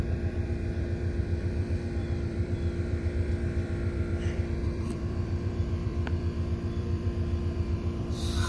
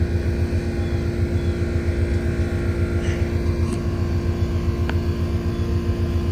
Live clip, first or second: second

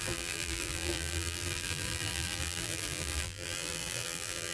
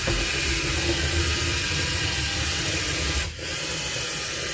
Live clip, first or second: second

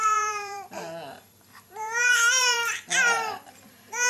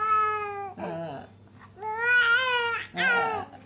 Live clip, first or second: second